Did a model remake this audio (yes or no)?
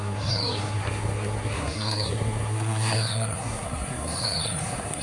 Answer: yes